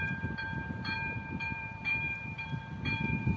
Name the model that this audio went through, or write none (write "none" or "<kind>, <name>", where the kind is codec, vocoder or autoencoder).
vocoder, BigVGAN v2